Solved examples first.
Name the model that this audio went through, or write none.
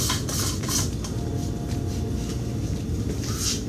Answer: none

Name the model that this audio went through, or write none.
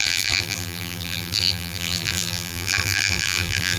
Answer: vocoder, BigVGAN v2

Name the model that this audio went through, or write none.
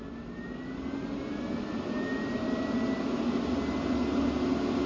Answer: none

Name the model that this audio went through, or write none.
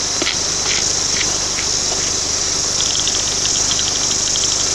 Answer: none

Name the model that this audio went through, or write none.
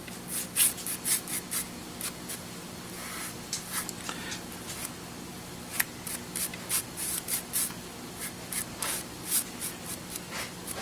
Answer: none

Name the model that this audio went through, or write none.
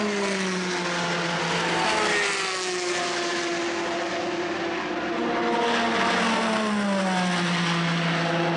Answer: none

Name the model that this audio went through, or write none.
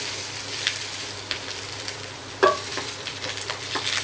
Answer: vocoder, BigVGAN v2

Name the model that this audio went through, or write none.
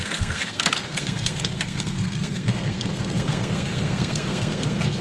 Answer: codec, SNAC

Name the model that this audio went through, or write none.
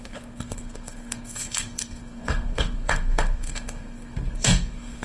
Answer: codec, SNAC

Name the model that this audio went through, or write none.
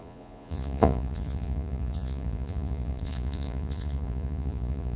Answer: vocoder, Vocos